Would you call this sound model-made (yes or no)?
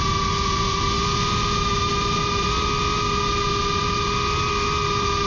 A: no